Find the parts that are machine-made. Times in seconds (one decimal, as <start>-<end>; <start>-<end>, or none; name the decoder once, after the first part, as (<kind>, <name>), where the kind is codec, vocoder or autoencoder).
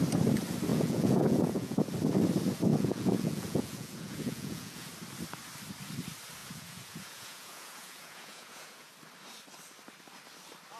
0.7-1.9 (vocoder, Vocos); 2.7-4.9; 6.4-8.9